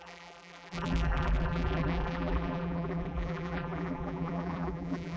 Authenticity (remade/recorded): remade